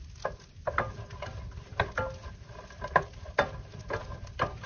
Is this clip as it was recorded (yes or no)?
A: yes